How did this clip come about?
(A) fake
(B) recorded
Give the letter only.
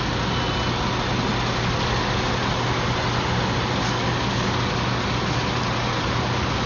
B